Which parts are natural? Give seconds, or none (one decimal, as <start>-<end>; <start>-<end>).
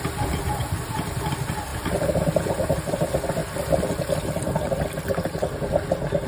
0.0-6.3